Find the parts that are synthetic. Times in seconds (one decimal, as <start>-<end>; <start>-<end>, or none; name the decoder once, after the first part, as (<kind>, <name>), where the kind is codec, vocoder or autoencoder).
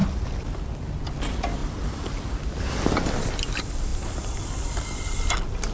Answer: 1.6-2.8 (vocoder, BigVGAN v2); 3.9-5.0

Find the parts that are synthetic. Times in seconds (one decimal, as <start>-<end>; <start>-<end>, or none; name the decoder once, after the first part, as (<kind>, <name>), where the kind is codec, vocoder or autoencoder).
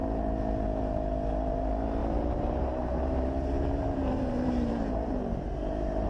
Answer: 2.0-6.1 (vocoder, BigVGAN v2)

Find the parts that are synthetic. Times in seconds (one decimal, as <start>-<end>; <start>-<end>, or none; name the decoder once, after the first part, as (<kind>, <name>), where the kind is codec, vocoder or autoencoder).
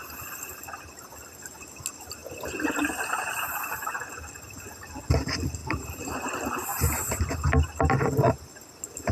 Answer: 5.6-6.1 (vocoder, BigVGAN v2)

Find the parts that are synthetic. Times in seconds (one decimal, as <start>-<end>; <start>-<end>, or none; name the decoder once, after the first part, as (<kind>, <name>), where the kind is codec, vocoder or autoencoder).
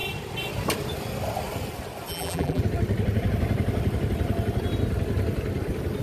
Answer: 2.1-2.6 (vocoder, BigVGAN v2)